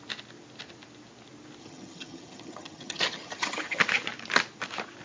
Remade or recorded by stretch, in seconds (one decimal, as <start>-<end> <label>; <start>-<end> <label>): 0.0-1.6 recorded; 1.6-3.8 remade; 3.8-5.0 recorded

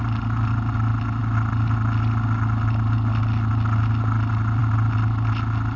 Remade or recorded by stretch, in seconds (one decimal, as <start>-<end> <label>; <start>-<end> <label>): 0.0-5.8 recorded